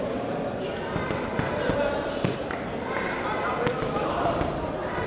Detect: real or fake real